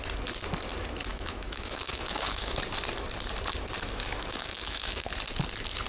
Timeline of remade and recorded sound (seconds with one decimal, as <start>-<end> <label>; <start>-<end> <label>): 0.0-1.1 recorded; 1.1-2.5 remade; 2.5-4.0 recorded; 4.0-5.1 remade; 5.1-5.9 recorded